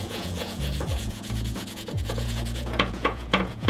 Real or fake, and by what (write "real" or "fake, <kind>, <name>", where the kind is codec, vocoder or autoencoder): fake, vocoder, Vocos